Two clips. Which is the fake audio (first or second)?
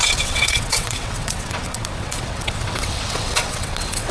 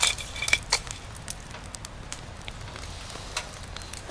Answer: first